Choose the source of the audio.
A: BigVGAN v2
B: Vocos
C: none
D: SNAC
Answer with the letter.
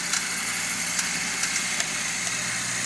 C